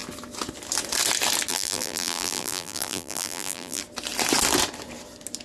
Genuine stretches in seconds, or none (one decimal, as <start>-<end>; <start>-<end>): 0.0-1.5; 3.8-5.4